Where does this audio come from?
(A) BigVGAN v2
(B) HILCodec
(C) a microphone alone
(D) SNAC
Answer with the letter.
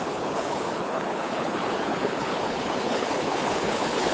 B